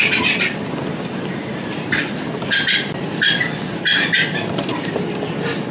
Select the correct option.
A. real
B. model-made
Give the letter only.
A